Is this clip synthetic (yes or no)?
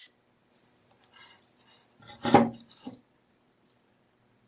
no